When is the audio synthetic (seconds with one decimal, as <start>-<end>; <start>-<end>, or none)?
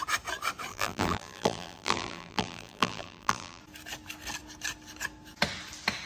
0.7-3.6